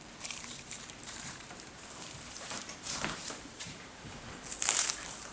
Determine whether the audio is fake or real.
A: fake